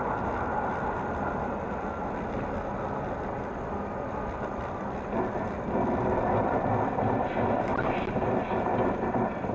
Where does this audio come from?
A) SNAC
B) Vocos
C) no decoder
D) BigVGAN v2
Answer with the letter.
C